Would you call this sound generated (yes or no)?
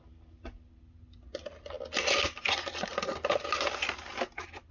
no